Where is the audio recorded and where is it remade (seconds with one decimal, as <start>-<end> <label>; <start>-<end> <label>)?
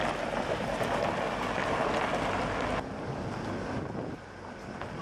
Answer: 0.0-5.0 recorded